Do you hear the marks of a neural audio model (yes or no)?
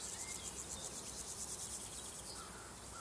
no